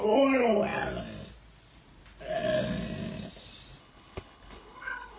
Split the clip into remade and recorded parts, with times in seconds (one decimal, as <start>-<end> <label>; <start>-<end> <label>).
0.0-3.8 recorded; 3.8-5.2 remade